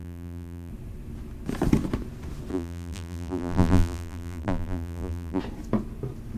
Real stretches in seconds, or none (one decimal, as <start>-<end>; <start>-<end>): 0.7-2.5; 5.4-6.4